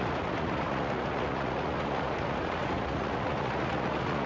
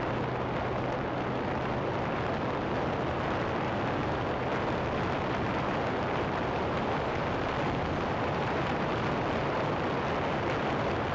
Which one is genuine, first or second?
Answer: second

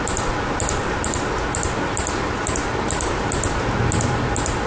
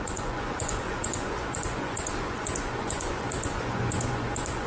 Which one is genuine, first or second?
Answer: first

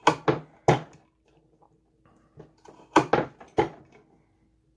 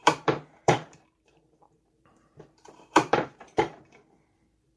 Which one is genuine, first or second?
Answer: first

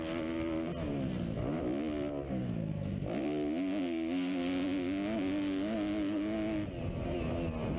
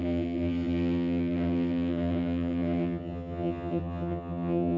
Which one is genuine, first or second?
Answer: first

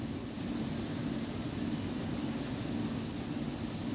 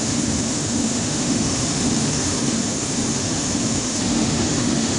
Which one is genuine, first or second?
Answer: first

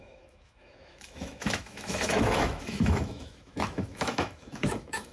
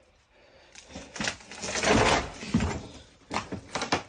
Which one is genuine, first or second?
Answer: second